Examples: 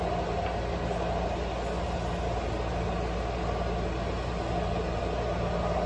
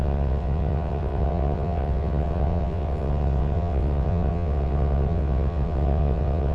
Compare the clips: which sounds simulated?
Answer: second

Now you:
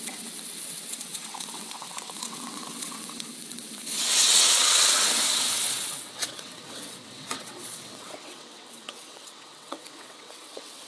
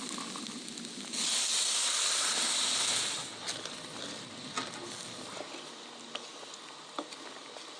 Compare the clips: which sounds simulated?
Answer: first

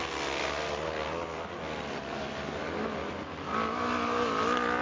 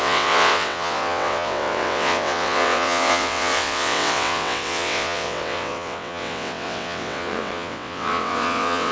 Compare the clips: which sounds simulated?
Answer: second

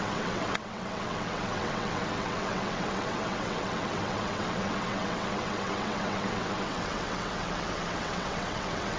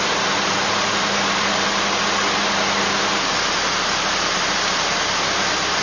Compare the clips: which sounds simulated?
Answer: first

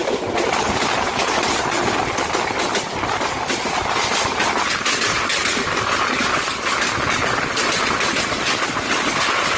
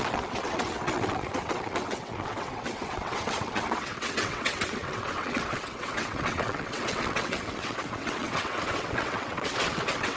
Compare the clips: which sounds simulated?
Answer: second